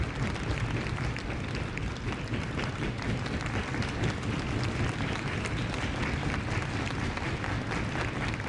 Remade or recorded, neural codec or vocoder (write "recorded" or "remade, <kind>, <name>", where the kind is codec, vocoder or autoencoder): recorded